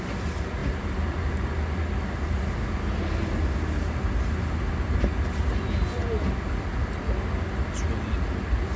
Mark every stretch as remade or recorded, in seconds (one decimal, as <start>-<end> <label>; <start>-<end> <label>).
0.0-8.8 recorded